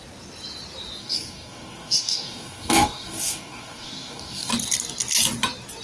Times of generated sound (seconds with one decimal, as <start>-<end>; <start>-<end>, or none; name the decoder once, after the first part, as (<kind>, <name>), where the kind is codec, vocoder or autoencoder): 1.0-4.5 (codec, DAC)